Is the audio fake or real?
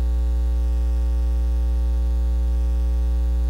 real